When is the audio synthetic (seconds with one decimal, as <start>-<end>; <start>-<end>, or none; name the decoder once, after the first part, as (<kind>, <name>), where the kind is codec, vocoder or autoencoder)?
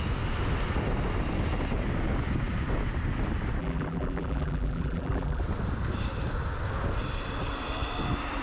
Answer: 3.6-5.4 (vocoder, BigVGAN v2)